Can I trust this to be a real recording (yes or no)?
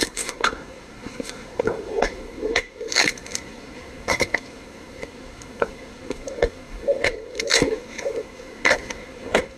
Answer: no